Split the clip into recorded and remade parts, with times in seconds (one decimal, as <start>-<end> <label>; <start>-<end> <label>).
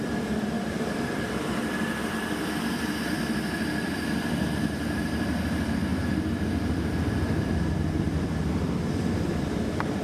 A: 0.0-5.9 remade; 5.9-6.9 recorded; 6.9-10.0 remade